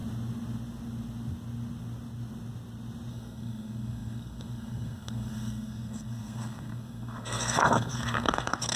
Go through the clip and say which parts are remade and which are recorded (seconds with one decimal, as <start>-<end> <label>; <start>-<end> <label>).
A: 0.0-3.1 recorded; 3.1-8.8 remade